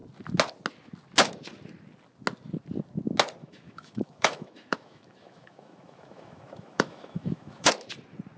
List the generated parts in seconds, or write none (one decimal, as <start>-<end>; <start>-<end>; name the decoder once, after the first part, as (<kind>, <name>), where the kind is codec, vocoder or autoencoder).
3.4-7.7 (autoencoder, DAC-VAE)